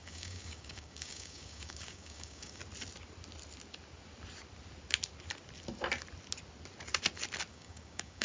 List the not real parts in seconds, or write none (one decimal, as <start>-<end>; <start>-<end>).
0.0-2.6; 7.5-8.2